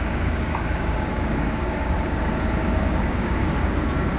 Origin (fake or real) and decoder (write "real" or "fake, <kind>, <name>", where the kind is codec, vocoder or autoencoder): fake, codec, DAC